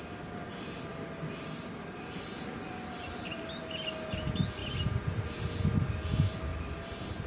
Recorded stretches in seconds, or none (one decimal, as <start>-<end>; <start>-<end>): 0.0-7.3